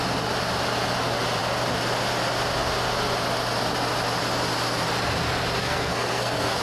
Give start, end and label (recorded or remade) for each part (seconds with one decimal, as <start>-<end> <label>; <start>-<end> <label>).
0.0-5.6 recorded; 5.6-6.6 remade